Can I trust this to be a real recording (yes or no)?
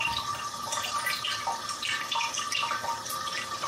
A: no